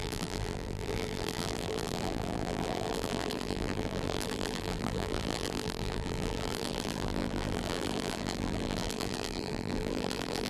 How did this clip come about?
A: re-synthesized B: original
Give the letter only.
A